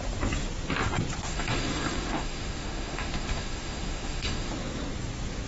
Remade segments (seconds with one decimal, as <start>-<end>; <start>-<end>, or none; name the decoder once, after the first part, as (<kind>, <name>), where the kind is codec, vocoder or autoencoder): 1.3-4.5 (autoencoder, DAC-VAE)